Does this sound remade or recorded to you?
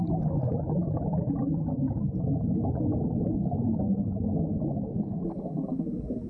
recorded